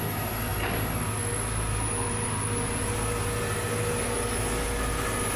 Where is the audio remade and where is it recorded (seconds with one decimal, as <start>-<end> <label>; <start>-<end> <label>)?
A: 0.0-5.4 recorded